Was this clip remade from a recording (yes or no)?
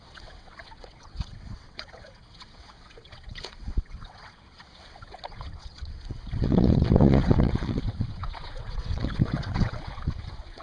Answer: yes